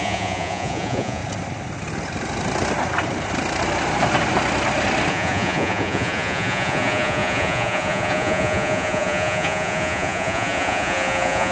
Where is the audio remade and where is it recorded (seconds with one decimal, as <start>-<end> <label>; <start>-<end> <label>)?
0.0-1.2 remade; 1.2-5.1 recorded; 5.1-11.5 remade